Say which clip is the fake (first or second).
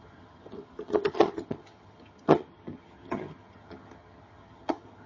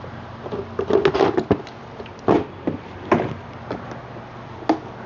first